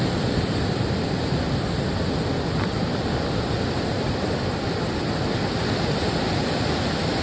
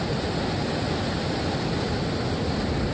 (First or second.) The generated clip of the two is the first